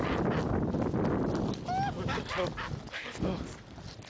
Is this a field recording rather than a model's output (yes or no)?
yes